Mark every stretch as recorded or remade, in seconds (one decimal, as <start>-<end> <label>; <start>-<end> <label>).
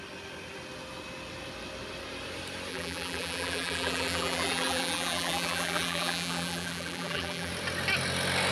0.0-2.7 recorded; 2.7-7.5 remade; 7.5-8.5 recorded